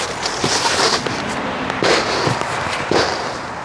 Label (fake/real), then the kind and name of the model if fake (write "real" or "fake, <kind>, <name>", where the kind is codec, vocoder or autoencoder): real